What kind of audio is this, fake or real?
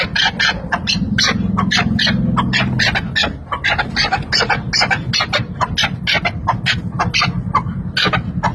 real